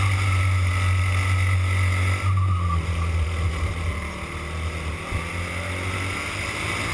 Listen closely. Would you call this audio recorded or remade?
recorded